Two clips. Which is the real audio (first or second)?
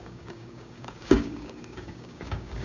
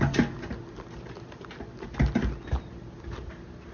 second